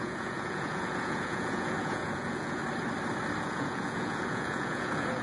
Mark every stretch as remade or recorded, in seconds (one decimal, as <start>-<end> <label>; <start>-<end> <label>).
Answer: 0.0-2.6 remade; 2.6-3.4 recorded; 3.4-5.2 remade